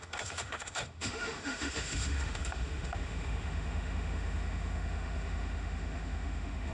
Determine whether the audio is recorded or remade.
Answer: remade